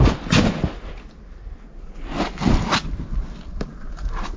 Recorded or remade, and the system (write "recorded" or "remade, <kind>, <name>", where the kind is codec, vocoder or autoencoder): recorded